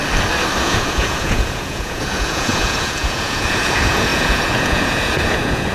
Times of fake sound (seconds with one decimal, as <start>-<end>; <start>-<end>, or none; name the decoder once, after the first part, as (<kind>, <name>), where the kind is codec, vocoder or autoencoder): 0.6-5.7 (vocoder, Vocos)